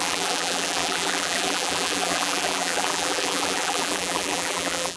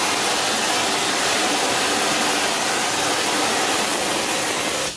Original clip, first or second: second